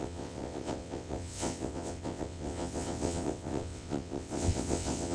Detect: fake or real fake